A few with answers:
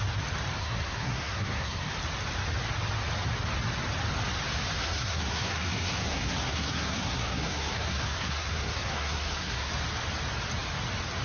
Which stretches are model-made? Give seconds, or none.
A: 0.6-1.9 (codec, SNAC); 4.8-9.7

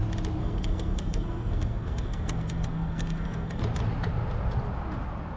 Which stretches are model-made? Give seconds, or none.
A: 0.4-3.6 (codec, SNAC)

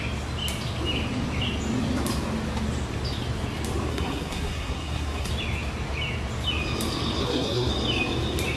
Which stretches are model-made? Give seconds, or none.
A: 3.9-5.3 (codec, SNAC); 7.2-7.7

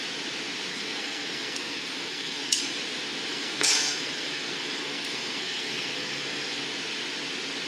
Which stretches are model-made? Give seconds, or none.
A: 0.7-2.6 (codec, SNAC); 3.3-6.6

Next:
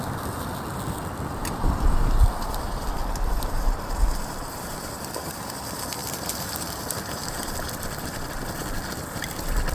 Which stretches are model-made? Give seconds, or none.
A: none

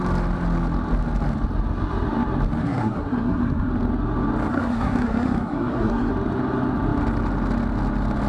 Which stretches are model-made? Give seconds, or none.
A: 2.6-3.7 (codec, SNAC); 4.5-6.1

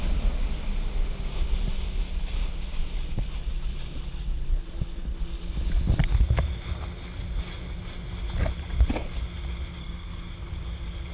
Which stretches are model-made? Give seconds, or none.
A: 9.8-10.3 (codec, SNAC)

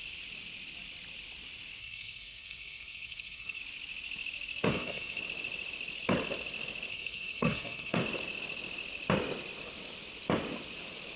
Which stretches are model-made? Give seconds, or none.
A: 1.8-3.6 (codec, SNAC); 4.7-5.2; 6.9-8.0